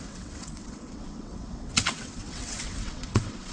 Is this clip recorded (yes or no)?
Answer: no